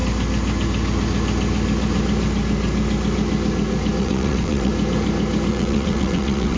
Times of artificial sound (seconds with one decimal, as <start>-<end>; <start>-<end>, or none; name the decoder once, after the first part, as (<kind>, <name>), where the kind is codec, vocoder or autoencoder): 4.0-4.7 (vocoder, WaveNeXt); 5.5-6.6